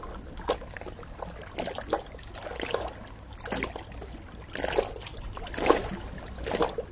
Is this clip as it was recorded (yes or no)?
yes